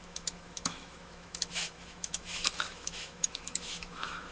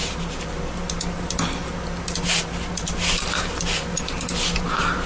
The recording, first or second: second